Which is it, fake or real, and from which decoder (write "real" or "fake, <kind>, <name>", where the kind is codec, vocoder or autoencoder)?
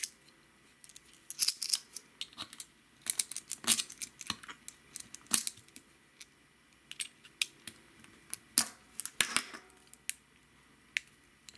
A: real